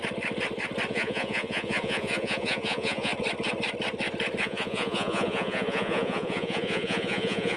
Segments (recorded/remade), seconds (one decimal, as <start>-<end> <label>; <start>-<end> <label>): 0.0-0.9 recorded; 0.9-3.1 remade; 3.1-4.4 recorded; 4.4-7.6 remade